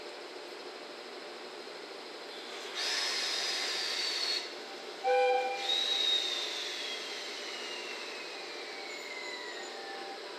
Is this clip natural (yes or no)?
yes